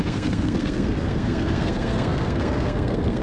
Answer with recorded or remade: remade